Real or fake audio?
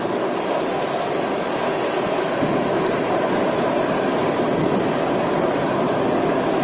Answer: real